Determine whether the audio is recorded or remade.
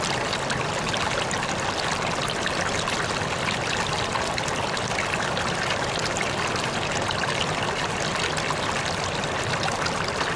recorded